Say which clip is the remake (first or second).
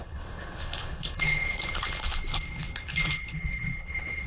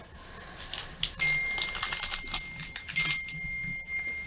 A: first